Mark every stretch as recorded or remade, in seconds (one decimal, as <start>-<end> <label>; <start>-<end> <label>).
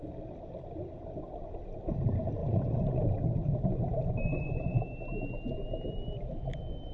0.0-2.4 recorded; 2.4-3.0 remade; 3.0-4.3 recorded; 4.3-4.8 remade; 4.8-6.9 recorded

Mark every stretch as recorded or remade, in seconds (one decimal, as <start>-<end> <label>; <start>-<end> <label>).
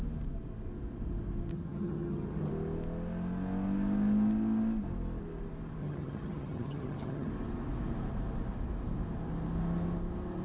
0.0-1.5 recorded; 1.5-2.5 remade; 2.5-5.8 recorded; 5.8-7.3 remade; 7.3-10.4 recorded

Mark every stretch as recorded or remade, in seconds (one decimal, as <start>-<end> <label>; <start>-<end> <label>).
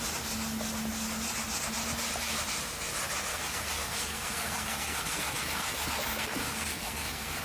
0.0-3.3 recorded; 3.3-7.4 remade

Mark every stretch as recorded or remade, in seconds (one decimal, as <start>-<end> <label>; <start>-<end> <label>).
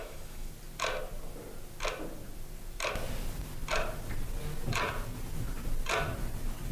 0.0-0.5 remade; 0.5-6.7 recorded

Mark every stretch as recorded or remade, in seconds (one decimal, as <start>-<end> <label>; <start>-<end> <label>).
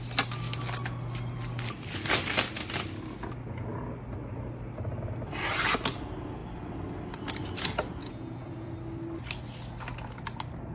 0.0-8.0 recorded; 8.0-8.7 remade; 8.7-10.7 recorded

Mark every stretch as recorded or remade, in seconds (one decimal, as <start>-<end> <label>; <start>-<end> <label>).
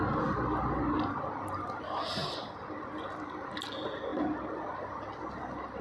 0.0-5.8 recorded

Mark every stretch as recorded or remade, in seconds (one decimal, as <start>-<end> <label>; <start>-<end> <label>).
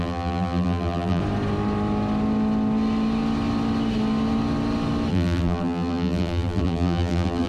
0.0-1.2 remade; 1.2-5.1 recorded; 5.1-7.5 remade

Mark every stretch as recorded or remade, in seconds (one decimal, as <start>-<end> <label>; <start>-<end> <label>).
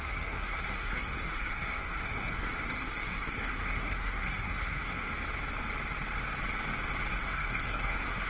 0.0-5.1 remade; 5.1-7.1 recorded; 7.1-8.3 remade